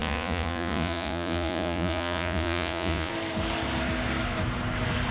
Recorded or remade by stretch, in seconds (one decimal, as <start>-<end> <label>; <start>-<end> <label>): 0.0-3.1 remade; 3.1-5.1 recorded